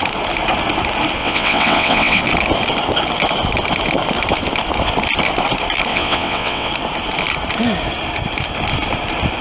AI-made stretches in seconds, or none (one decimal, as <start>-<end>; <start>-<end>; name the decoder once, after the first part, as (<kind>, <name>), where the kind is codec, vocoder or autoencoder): 1.2-2.2 (vocoder, WaveNeXt); 5.9-6.7

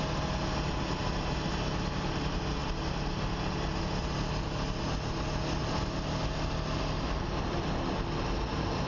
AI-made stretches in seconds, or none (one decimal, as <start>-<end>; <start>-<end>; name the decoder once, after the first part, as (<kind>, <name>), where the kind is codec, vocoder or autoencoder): none

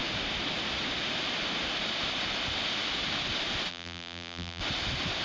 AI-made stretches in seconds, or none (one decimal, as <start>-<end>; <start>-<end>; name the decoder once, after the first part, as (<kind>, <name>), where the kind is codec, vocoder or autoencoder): 3.7-4.6 (vocoder, BigVGAN v2)

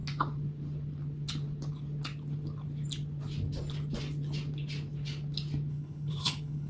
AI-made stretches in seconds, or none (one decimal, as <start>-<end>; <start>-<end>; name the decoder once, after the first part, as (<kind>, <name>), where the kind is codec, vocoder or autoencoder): 5.7-6.7 (codec, HILCodec)